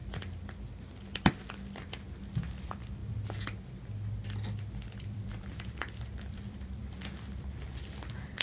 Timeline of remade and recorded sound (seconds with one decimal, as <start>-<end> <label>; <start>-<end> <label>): 0.0-2.5 recorded; 2.5-3.0 remade; 3.0-5.0 recorded; 5.0-8.4 remade